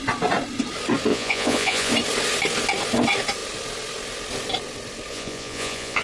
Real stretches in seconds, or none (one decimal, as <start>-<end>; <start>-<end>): 0.0-1.1; 1.9-5.1